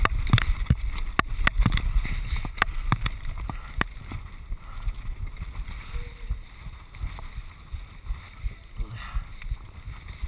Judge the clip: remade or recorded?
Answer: recorded